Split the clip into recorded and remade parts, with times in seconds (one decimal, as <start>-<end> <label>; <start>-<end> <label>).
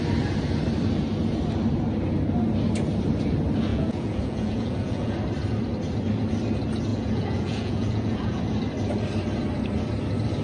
0.0-3.7 recorded; 3.7-5.1 remade; 5.1-6.9 recorded; 6.9-8.4 remade; 8.4-10.4 recorded